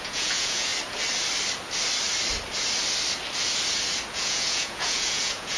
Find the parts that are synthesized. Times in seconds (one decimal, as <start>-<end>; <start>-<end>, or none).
0.0-0.7; 4.1-5.6